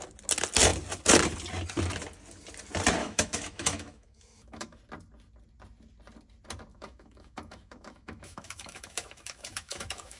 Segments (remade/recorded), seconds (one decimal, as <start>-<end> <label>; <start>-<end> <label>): 0.0-3.0 recorded; 3.0-4.8 remade; 4.8-6.7 recorded; 6.7-10.2 remade

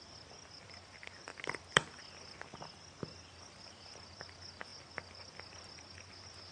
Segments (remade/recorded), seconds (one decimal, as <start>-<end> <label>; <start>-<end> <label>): 0.0-6.5 recorded

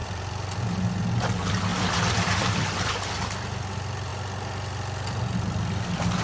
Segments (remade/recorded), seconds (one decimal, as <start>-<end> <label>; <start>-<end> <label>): 0.0-0.6 remade; 0.6-1.7 recorded; 1.7-2.7 remade; 2.7-6.2 recorded

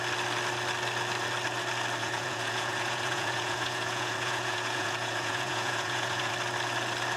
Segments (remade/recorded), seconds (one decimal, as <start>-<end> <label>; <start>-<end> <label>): 0.0-2.0 recorded; 2.0-6.3 remade; 6.3-7.2 recorded

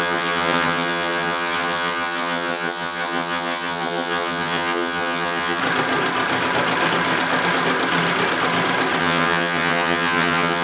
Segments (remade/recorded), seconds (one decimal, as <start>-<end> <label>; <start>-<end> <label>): 0.0-5.6 remade; 5.6-9.0 recorded; 9.0-10.6 remade

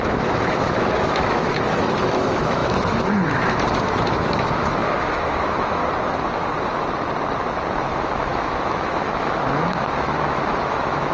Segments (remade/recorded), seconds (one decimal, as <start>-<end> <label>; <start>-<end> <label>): 0.0-5.8 remade; 5.8-7.8 recorded; 7.8-11.1 remade